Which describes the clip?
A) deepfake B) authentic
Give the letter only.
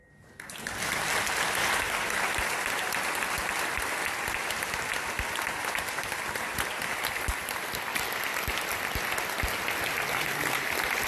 B